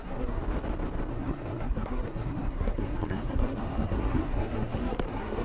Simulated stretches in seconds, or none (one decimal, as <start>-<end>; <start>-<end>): 0.0-0.4; 1.1-5.4